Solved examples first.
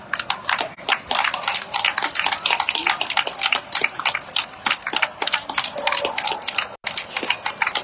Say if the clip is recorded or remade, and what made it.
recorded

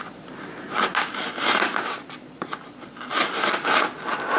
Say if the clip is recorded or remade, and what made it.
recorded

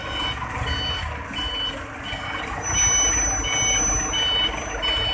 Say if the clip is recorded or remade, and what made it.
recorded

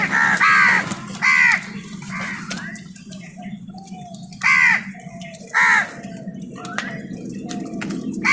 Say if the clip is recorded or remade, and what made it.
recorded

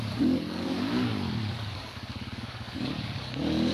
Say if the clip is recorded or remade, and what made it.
remade, codec, DAC